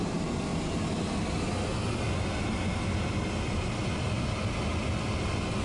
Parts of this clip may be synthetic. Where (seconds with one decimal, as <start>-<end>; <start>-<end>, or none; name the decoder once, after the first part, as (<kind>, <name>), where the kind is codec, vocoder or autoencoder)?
none